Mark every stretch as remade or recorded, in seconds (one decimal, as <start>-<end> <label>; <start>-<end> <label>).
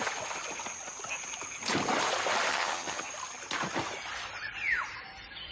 0.0-2.5 recorded; 2.5-3.1 remade; 3.1-5.5 recorded